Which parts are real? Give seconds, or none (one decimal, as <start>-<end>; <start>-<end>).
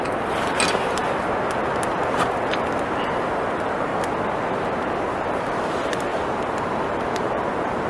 0.0-6.1; 7.3-7.9